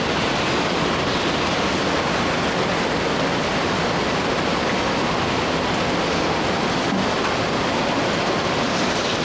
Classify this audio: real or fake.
real